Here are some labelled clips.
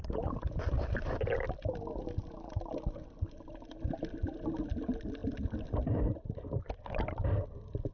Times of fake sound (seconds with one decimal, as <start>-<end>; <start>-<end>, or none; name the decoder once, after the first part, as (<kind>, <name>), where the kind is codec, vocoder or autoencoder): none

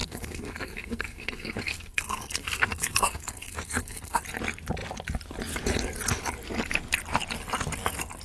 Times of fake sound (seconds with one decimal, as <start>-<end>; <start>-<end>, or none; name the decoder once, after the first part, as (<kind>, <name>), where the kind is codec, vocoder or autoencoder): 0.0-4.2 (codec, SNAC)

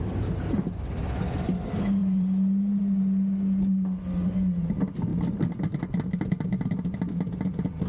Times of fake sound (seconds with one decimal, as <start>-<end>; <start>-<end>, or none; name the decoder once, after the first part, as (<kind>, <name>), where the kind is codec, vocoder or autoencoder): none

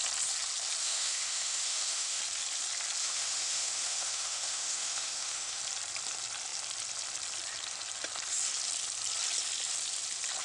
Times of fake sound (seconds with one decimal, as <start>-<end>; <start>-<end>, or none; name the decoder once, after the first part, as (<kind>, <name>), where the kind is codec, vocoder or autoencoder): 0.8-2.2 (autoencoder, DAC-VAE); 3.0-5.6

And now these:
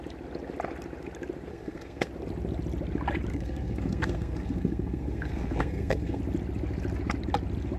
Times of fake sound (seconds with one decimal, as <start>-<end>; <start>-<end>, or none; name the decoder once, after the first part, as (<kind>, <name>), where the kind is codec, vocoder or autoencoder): 1.5-2.1 (codec, SNAC); 3.3-6.2

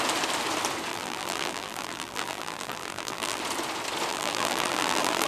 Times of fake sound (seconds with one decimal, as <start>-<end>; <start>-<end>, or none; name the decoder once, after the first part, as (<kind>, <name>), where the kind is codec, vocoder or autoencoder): 0.9-3.4 (vocoder, BigVGAN v2); 4.1-5.3

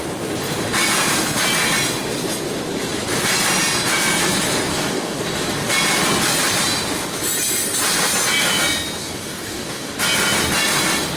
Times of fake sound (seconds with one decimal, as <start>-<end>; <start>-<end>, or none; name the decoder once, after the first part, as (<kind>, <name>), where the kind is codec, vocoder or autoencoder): 4.7-5.2 (codec, DAC); 9.0-9.9

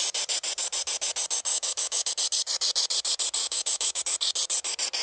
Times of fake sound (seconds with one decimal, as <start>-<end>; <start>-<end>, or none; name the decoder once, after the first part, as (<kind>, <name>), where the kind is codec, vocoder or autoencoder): 1.5-2.1 (autoencoder, DAC-VAE); 3.4-4.0